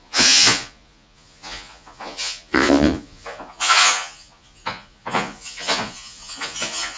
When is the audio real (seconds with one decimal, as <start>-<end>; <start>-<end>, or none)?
none